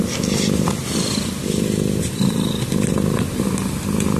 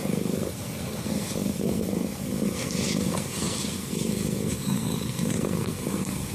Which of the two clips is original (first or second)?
first